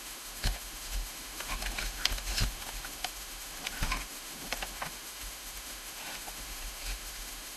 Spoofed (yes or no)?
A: yes